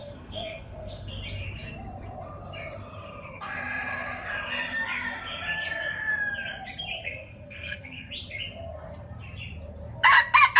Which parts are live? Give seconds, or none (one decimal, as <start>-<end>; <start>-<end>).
1.1-7.0; 8.1-10.6